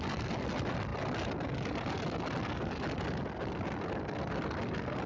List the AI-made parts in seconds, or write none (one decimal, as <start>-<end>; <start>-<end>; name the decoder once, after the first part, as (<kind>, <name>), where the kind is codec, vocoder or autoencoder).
none